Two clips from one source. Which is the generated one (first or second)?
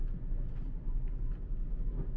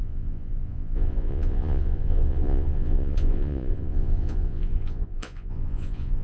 second